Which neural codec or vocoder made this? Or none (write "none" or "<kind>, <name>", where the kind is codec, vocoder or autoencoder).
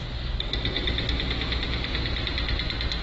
none